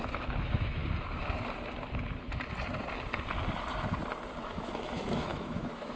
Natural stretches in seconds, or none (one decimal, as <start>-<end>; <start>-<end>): 0.8-4.4